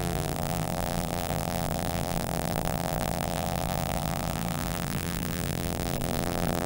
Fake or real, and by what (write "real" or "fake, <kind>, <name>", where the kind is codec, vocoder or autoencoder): fake, vocoder, BigVGAN v2